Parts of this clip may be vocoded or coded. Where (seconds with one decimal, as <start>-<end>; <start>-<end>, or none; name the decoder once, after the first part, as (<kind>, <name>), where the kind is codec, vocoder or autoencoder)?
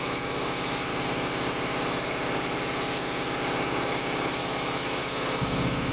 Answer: 0.0-0.9 (autoencoder, DAC-VAE); 4.4-5.0